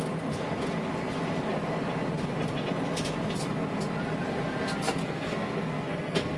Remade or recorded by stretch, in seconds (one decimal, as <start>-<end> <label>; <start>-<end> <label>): 0.0-5.0 recorded; 5.0-6.4 remade